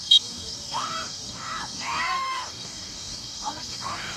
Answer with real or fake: fake